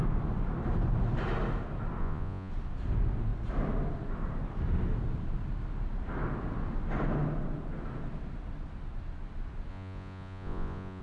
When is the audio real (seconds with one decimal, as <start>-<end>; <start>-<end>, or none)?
0.0-2.0; 2.5-9.7